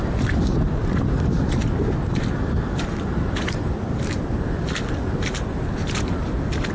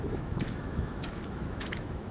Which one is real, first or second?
first